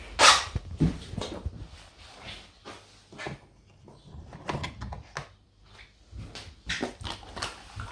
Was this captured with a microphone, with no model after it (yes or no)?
yes